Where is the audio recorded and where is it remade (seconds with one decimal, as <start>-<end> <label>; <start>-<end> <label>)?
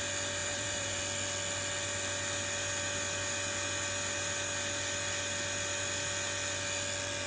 0.0-0.4 recorded; 0.4-1.0 remade; 1.0-7.3 recorded